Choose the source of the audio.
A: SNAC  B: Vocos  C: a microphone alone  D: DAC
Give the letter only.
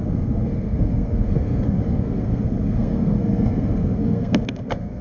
A